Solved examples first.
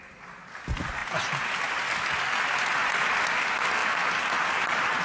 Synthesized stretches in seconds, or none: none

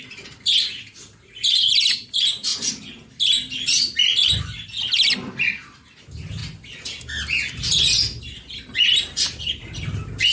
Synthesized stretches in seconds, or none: none

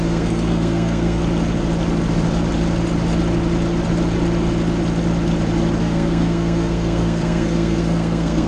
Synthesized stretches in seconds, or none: 0.0-1.2 (codec, SNAC); 5.8-8.5

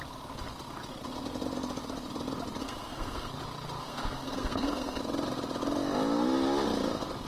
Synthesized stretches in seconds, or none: 2.6-3.3 (codec, SNAC); 3.8-5.0

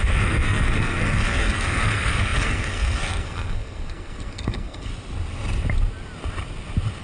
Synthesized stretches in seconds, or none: 0.0-4.9 (codec, SNAC)

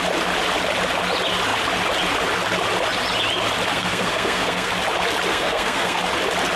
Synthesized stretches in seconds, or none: 3.7-4.7 (codec, SNAC); 5.3-6.0

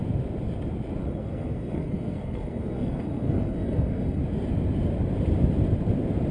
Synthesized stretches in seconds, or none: 1.0-4.2 (codec, SNAC)

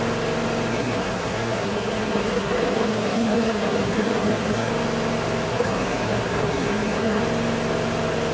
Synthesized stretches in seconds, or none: 0.7-4.7 (codec, SNAC); 5.5-7.2